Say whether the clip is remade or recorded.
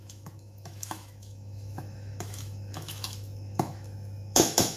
remade